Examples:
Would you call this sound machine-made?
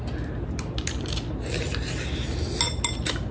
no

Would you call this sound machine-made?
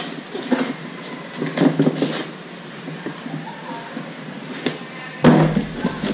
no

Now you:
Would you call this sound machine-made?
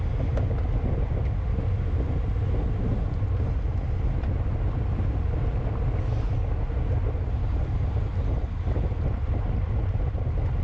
no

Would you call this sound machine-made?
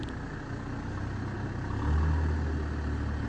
no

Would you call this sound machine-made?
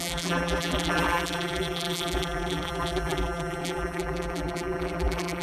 yes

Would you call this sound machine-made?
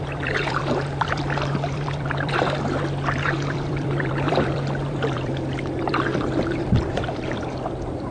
yes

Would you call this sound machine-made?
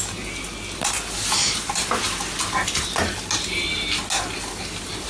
no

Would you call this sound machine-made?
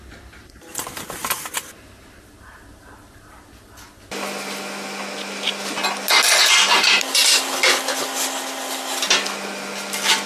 no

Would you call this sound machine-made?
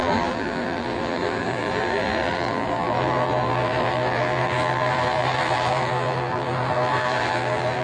yes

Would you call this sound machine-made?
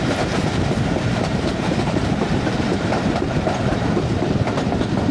yes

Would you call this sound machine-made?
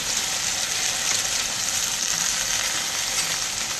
no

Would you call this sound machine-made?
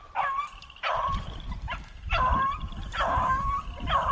yes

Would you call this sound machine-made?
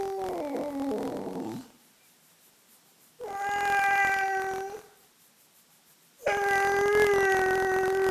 no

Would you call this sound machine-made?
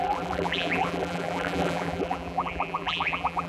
yes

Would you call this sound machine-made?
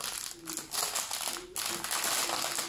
no